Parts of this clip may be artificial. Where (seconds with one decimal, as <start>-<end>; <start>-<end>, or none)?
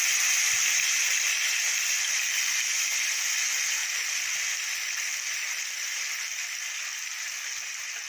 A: none